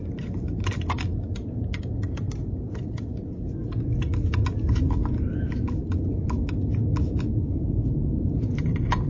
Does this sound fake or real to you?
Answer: real